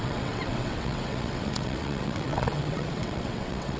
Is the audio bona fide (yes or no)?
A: no